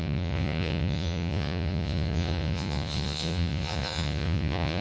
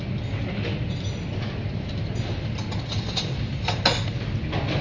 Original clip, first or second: second